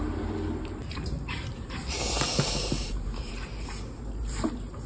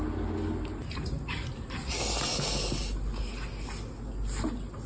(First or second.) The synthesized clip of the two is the first